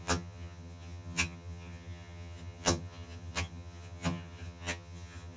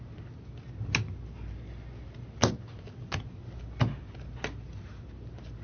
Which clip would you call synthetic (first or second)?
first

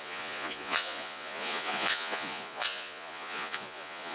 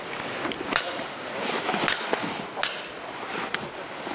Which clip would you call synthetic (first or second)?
first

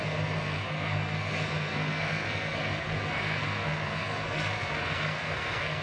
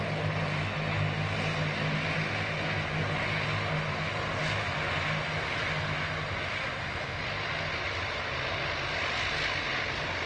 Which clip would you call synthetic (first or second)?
first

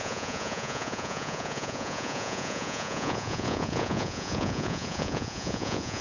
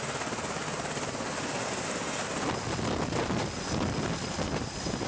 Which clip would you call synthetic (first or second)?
first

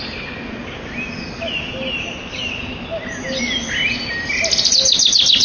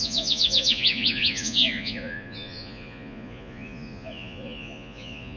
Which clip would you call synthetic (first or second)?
second